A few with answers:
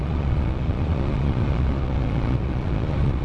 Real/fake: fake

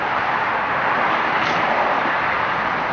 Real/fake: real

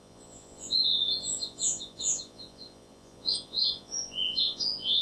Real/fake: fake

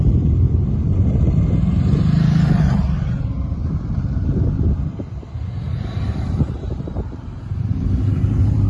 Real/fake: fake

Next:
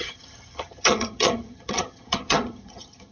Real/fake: fake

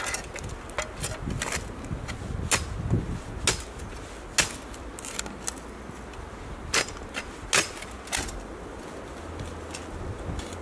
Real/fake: real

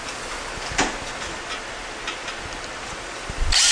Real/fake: real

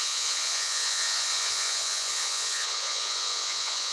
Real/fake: fake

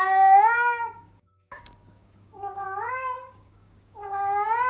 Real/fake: fake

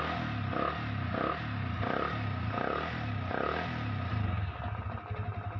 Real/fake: real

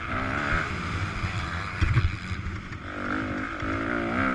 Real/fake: real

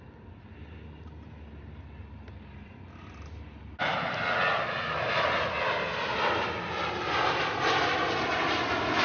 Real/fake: real